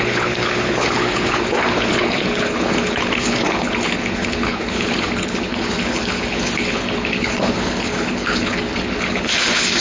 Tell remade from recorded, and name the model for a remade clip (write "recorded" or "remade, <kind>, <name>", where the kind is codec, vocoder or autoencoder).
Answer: remade, codec, HILCodec